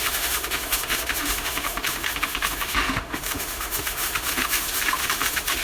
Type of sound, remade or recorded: remade